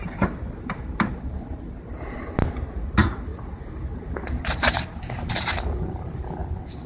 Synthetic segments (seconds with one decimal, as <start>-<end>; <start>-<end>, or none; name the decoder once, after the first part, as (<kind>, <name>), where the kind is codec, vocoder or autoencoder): 0.0-3.3 (vocoder, BigVGAN v2); 4.0-6.9